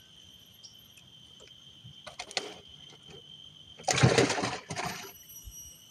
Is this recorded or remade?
recorded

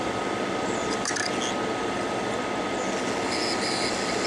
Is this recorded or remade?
recorded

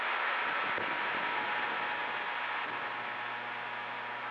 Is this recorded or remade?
recorded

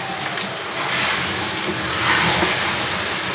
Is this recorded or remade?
recorded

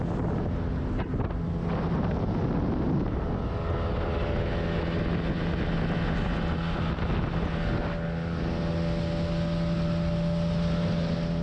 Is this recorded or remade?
recorded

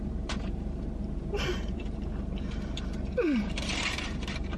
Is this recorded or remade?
remade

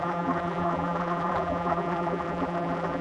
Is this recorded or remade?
remade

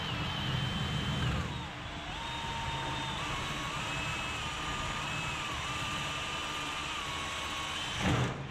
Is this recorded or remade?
recorded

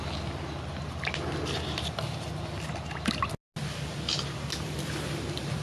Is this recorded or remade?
recorded